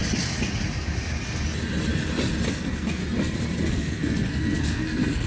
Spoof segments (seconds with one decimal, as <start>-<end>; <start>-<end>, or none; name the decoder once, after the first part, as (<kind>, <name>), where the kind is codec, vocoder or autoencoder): 2.5-3.0 (codec, SNAC); 3.7-5.3